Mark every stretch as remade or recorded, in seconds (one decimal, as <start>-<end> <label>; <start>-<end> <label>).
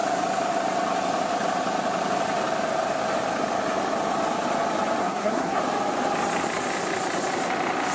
0.0-5.0 recorded; 5.0-5.6 remade; 5.6-7.9 recorded